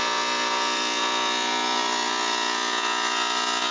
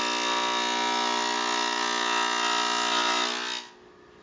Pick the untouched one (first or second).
second